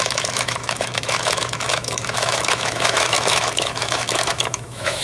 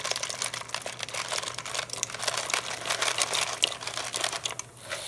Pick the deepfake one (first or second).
first